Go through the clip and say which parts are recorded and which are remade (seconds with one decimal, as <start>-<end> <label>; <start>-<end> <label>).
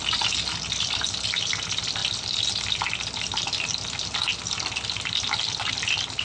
0.0-6.2 recorded